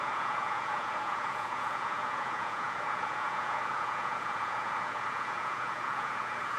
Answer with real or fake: fake